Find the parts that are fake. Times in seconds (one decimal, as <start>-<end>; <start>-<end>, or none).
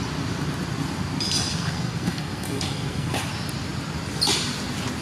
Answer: 1.5-3.2